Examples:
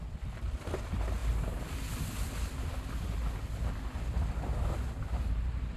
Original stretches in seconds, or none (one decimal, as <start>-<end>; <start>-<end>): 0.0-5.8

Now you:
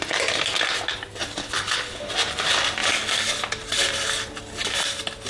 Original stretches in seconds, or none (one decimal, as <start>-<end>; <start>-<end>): 0.0-1.4; 2.1-5.3

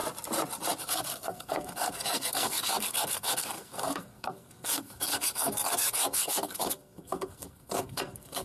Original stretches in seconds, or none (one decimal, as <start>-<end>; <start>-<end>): 0.0-0.8

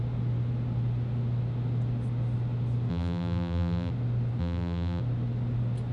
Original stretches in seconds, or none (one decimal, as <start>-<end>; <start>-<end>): 0.0-2.9; 3.9-4.4; 5.0-5.9

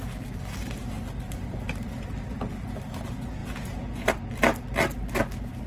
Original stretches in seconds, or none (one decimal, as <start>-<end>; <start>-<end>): 0.0-3.4; 4.1-5.7

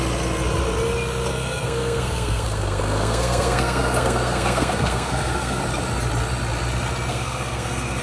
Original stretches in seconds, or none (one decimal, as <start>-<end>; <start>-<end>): 0.0-1.3; 5.6-7.1

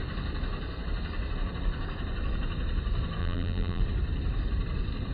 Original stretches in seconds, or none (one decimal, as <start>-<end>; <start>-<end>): 0.0-3.2; 3.8-5.1